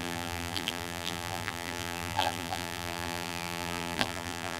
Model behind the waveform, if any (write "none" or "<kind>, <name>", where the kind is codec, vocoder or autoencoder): vocoder, BigVGAN v2